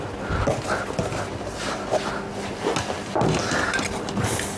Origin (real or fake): real